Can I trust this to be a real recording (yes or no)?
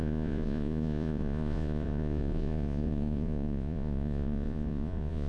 no